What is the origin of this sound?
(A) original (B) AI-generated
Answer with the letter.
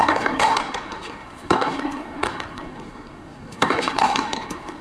B